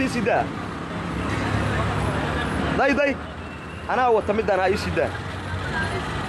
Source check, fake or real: real